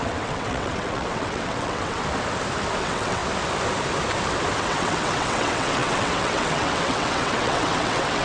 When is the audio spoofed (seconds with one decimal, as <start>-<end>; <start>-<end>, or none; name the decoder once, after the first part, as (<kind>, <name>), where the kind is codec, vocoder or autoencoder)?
0.0-2.0 (vocoder, WaveNeXt); 2.8-3.2; 4.6-8.2